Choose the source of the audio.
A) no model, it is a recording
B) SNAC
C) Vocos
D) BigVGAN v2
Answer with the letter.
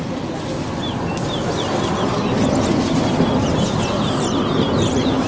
A